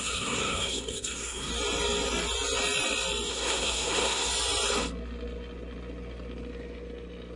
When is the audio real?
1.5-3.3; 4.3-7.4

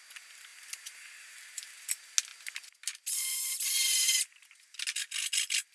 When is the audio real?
0.0-5.7

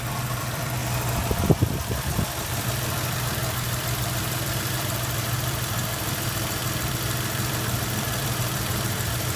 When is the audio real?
0.8-1.5

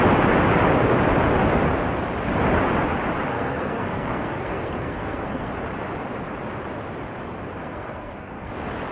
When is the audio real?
0.0-3.3; 5.5-7.6; 8.5-8.9

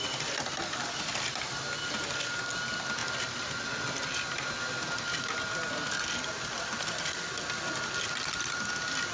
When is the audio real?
0.0-9.1

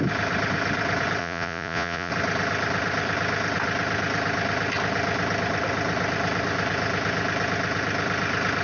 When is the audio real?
0.0-1.2; 2.1-8.6

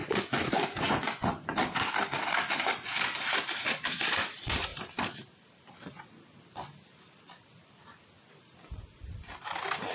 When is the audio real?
1.6-9.9

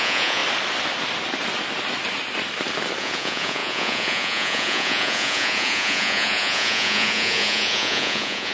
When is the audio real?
0.4-3.0